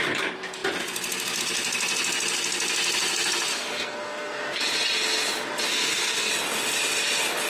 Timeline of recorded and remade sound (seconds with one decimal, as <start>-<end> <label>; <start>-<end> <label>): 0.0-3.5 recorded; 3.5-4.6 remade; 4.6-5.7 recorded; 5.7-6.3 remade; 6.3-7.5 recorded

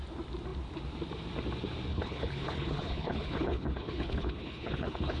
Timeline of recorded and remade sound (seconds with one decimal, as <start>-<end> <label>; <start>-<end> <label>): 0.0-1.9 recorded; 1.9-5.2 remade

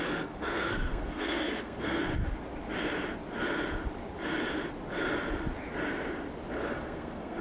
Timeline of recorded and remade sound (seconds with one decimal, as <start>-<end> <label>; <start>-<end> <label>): 0.0-2.1 remade; 2.1-6.5 recorded; 6.5-7.4 remade